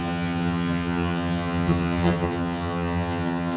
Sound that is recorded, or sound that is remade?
remade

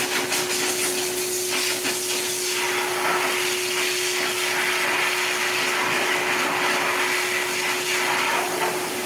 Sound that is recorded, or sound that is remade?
recorded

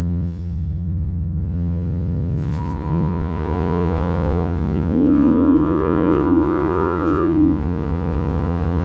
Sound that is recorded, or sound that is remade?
remade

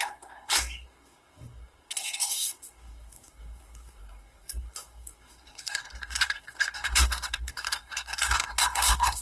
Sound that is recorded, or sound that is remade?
remade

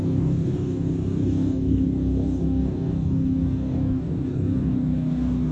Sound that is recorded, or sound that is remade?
remade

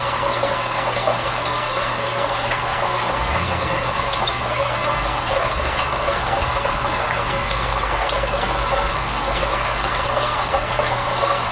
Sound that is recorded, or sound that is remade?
remade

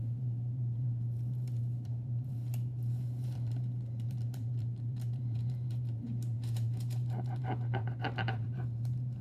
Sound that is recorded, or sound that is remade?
remade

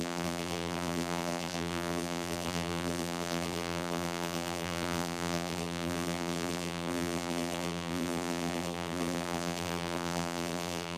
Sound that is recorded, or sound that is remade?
remade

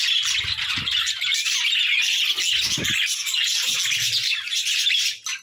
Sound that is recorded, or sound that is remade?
recorded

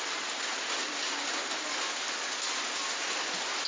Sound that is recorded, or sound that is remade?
recorded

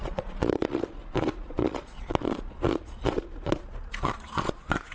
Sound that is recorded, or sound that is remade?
remade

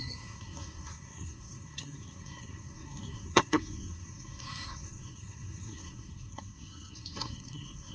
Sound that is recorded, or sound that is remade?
remade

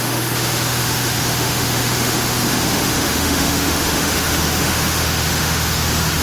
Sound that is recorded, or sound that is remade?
remade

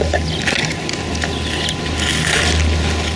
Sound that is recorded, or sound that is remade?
recorded